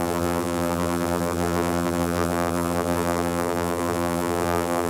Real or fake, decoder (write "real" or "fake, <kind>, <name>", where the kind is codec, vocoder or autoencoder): fake, vocoder, BigVGAN v2